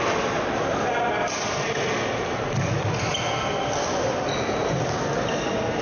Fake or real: real